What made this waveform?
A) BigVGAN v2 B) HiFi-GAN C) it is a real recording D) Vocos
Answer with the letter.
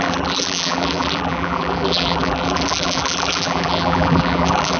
A